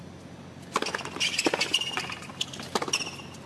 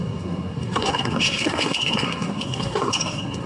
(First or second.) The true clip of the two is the first